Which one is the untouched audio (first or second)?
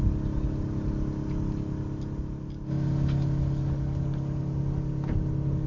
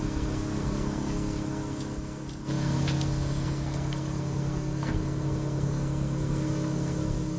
first